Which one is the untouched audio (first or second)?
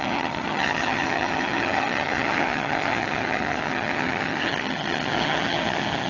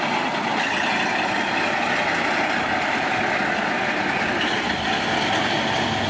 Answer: second